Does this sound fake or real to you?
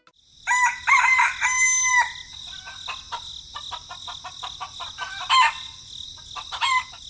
real